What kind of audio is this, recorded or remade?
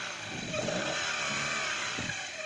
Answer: recorded